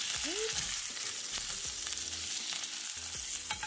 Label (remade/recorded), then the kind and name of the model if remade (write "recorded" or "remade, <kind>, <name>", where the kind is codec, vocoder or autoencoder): recorded